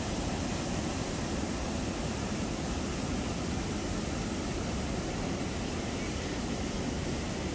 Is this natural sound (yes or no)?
yes